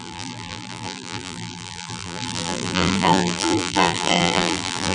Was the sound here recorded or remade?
remade